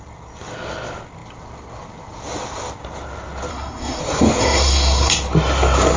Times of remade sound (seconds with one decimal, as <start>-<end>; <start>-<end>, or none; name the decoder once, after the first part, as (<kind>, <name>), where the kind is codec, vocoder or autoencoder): 3.5-4.0 (codec, SNAC); 4.4-5.1